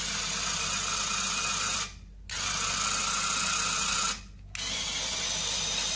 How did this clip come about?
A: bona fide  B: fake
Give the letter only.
A